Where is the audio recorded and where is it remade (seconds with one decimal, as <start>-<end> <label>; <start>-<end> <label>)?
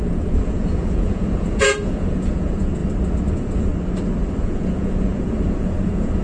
0.0-2.8 remade; 2.8-3.3 recorded; 3.3-3.7 remade; 3.7-4.3 recorded; 4.3-6.2 remade